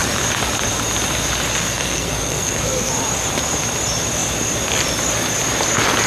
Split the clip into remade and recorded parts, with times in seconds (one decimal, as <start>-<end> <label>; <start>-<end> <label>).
0.0-1.6 recorded; 1.6-2.9 remade; 2.9-6.1 recorded